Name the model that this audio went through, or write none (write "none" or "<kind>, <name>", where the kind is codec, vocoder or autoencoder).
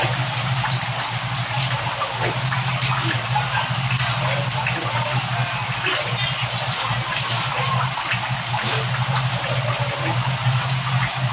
none